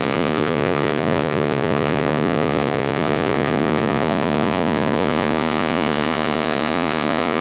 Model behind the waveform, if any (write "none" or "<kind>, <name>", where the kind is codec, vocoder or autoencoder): vocoder, Vocos